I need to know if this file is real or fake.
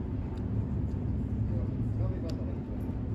real